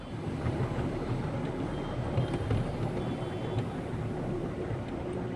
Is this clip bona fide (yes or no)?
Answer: yes